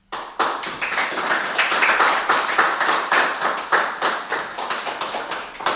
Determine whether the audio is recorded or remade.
recorded